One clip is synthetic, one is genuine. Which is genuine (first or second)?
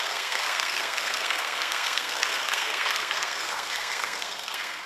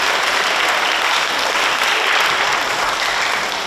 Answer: second